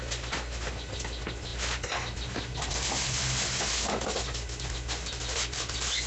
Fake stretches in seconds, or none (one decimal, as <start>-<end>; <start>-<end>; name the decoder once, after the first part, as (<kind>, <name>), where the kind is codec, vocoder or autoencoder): none